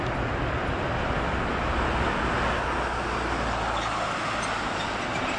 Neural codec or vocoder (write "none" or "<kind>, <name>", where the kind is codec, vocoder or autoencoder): none